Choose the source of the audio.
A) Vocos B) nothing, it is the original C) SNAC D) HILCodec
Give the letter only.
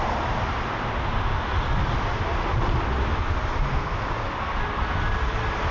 B